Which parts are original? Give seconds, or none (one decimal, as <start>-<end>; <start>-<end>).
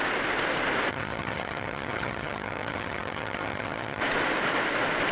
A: 0.0-0.9; 4.0-5.1